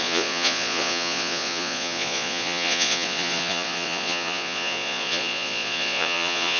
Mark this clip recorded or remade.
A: remade